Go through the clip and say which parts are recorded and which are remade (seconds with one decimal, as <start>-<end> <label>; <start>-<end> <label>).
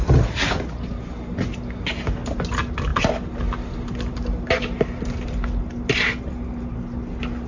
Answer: 0.0-7.5 recorded